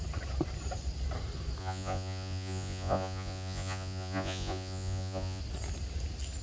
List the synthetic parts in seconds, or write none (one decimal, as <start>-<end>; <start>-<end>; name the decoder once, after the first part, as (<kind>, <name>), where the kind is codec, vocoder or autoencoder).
1.6-5.4 (vocoder, Vocos)